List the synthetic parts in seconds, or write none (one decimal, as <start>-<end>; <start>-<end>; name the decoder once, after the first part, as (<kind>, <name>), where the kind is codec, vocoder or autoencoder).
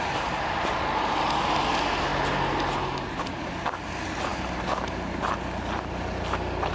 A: none